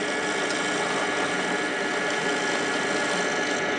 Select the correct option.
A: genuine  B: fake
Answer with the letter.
A